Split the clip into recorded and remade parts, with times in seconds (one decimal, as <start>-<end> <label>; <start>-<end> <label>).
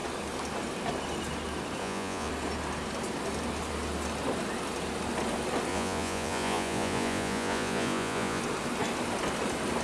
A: 0.0-1.8 recorded; 1.8-2.3 remade; 2.3-5.7 recorded; 5.7-8.4 remade; 8.4-9.8 recorded